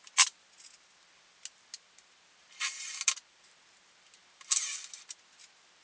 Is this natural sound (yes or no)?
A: yes